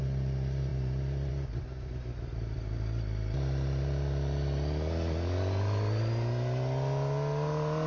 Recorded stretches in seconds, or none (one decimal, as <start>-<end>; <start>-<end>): 0.0-7.9